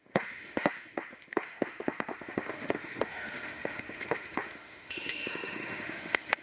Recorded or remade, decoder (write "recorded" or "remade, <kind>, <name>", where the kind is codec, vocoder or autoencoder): remade, autoencoder, DAC-VAE